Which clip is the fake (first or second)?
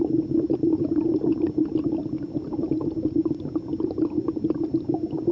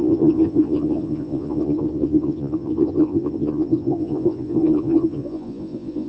second